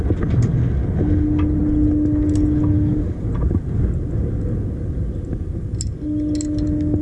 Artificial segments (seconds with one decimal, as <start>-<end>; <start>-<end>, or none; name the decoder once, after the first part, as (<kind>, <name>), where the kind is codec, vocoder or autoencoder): none